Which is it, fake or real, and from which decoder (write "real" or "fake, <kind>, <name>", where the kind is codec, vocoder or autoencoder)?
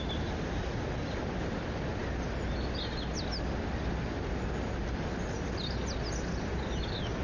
real